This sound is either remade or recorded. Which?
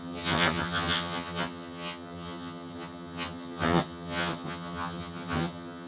remade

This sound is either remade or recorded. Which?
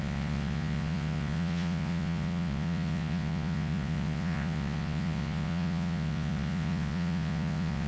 remade